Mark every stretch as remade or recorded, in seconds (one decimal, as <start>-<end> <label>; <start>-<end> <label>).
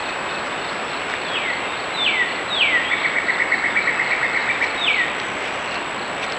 0.0-3.8 recorded; 3.8-6.4 remade